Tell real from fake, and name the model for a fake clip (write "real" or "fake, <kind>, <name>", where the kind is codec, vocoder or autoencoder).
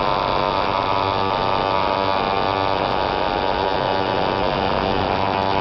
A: real